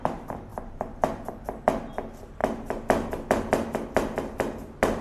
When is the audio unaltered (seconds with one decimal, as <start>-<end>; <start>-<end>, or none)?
0.0-0.5; 1.3-5.0